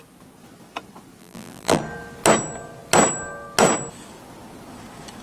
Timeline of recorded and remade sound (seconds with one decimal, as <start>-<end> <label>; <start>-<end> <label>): 0.0-1.2 recorded; 1.2-1.8 remade; 1.8-5.2 recorded